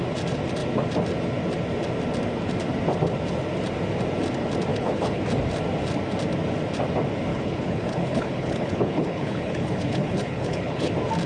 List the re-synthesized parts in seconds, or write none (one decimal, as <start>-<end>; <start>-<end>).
4.7-5.2; 7.3-10.9

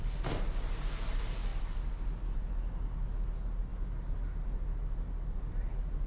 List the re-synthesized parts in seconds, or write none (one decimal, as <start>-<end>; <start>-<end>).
none

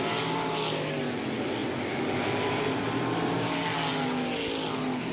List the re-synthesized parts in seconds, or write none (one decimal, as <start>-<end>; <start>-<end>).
none